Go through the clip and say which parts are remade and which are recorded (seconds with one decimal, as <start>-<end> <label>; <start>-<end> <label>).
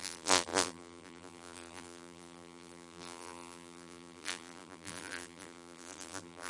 0.0-6.5 remade